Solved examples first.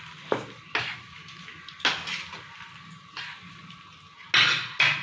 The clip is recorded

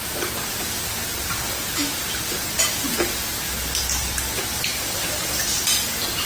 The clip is remade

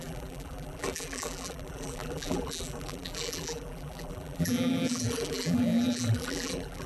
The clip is remade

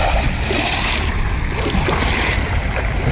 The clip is recorded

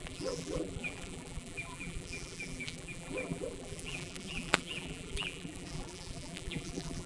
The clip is remade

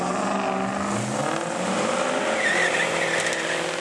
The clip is recorded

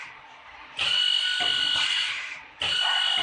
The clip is recorded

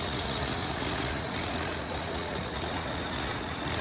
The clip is remade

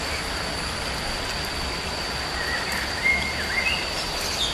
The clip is recorded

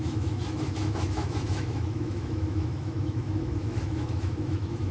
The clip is remade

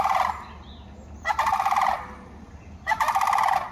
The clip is recorded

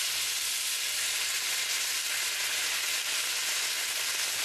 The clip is recorded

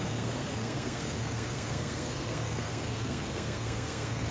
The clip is remade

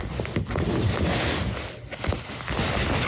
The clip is recorded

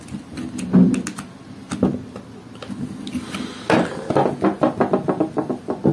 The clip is recorded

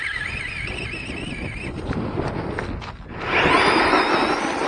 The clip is recorded